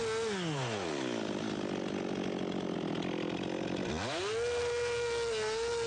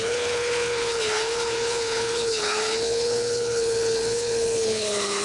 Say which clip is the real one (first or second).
first